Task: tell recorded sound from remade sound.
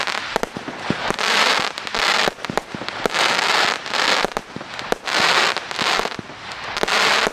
recorded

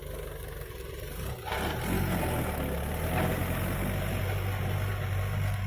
recorded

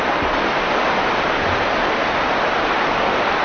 recorded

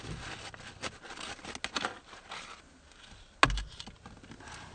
recorded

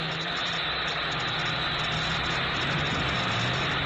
recorded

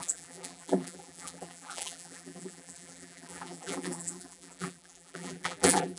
remade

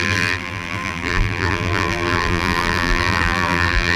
remade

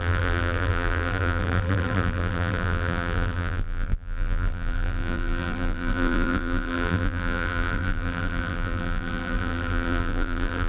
remade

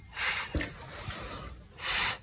remade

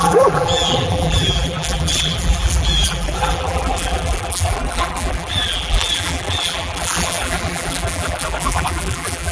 remade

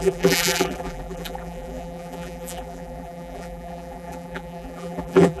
remade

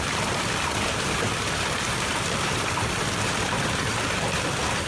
remade